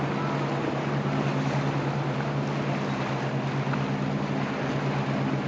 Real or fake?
real